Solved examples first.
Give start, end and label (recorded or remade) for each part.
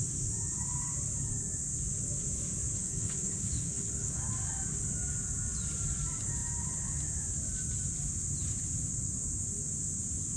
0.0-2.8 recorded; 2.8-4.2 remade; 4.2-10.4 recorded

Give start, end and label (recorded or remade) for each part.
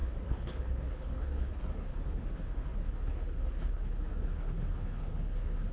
0.0-5.7 remade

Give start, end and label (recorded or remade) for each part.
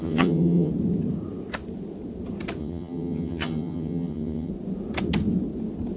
0.0-0.7 remade; 0.7-2.6 recorded; 2.6-4.5 remade; 4.5-6.0 recorded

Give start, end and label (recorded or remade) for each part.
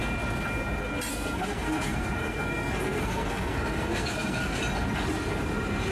0.0-1.1 recorded; 1.1-4.6 remade; 4.6-5.9 recorded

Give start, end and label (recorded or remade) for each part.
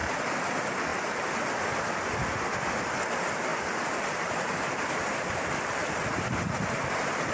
0.0-0.5 remade; 0.5-3.5 recorded; 3.5-6.0 remade; 6.0-7.3 recorded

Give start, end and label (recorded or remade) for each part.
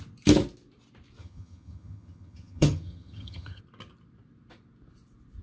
0.0-1.2 recorded; 1.2-3.6 remade; 3.6-5.4 recorded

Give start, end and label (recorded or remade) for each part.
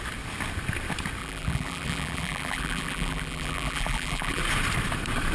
0.0-1.2 recorded; 1.2-4.4 remade; 4.4-5.3 recorded